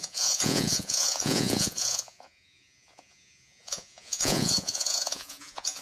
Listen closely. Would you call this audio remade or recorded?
remade